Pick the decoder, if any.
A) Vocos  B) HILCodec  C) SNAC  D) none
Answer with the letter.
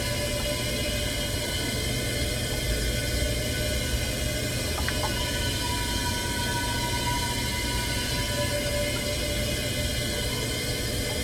D